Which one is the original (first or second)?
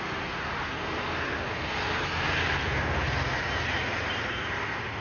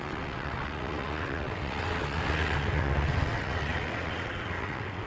first